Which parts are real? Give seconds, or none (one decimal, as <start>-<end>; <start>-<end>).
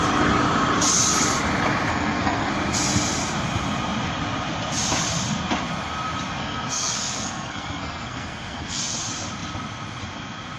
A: 0.0-1.9; 2.5-6.4; 8.9-10.6